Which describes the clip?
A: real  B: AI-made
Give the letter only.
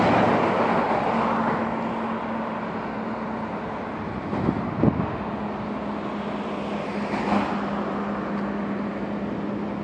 A